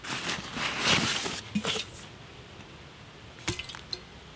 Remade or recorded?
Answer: recorded